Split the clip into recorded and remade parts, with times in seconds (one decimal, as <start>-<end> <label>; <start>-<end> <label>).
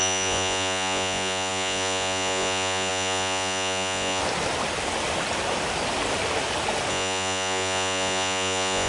0.0-4.2 remade; 4.2-6.9 recorded; 6.9-8.9 remade